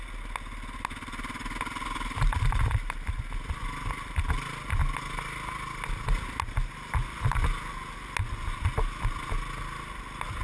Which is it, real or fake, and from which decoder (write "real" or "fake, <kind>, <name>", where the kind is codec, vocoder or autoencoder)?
real